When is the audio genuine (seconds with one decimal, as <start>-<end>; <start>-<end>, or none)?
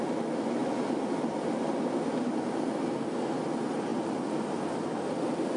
0.0-5.6